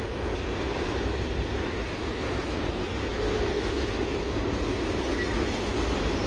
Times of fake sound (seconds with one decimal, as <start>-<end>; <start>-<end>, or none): 0.0-3.1; 4.0-5.1